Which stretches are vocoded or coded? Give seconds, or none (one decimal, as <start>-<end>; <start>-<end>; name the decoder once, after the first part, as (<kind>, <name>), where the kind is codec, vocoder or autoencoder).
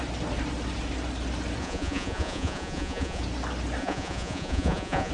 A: 1.6-3.2 (vocoder, Vocos); 3.8-5.1